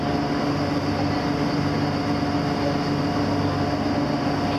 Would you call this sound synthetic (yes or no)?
no